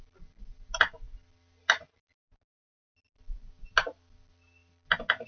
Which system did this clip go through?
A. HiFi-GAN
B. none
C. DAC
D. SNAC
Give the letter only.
B